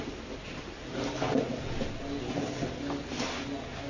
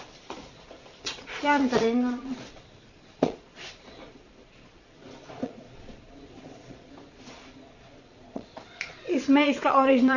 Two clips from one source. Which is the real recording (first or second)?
first